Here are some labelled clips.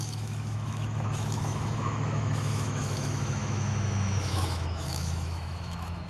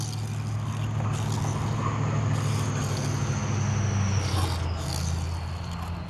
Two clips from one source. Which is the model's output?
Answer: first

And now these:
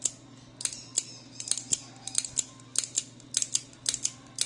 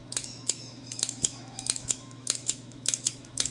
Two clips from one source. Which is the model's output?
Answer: second